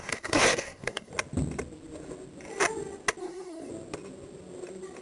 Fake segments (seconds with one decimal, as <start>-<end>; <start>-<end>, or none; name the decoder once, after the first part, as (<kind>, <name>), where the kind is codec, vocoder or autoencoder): 0.0-1.1 (codec, SNAC); 3.2-3.7